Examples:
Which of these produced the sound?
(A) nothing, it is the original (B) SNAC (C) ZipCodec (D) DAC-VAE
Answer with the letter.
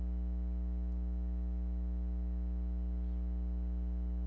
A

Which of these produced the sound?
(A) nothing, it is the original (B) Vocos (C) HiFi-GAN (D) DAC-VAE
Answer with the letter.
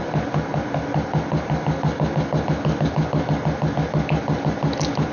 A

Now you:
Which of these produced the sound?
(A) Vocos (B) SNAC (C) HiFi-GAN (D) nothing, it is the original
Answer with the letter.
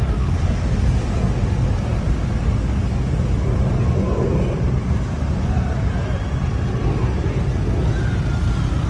D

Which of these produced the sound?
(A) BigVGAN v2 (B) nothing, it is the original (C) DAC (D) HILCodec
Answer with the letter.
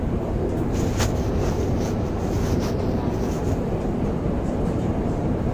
A